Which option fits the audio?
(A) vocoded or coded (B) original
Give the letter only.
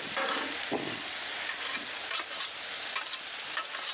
B